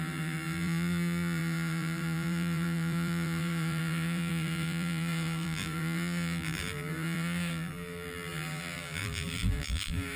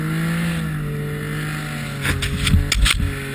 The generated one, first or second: first